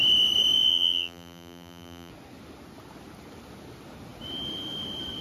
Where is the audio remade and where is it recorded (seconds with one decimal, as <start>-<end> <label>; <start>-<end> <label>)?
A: 0.0-0.7 recorded; 0.7-2.1 remade; 2.1-5.2 recorded